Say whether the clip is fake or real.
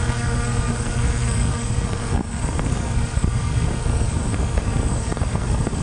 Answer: fake